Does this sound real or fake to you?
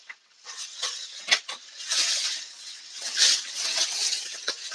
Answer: fake